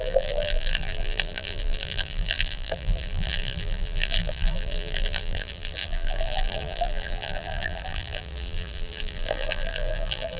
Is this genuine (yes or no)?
no